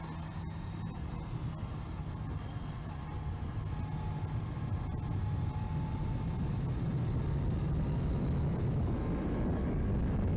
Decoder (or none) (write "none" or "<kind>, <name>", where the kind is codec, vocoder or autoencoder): none